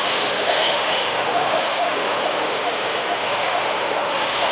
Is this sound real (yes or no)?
no